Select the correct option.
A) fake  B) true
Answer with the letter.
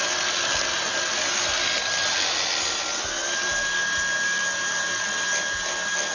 B